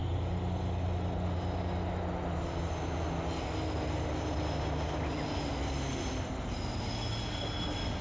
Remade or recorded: recorded